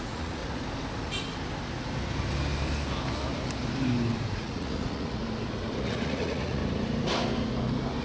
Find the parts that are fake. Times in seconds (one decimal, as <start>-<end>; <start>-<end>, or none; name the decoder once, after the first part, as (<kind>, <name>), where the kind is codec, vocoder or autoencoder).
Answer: 0.0-0.4 (vocoder, Vocos); 4.3-5.2; 5.8-6.6